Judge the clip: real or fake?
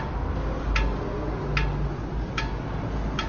real